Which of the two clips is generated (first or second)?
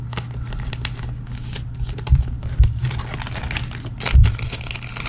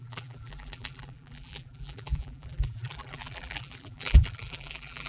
second